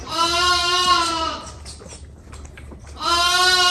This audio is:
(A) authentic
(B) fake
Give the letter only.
A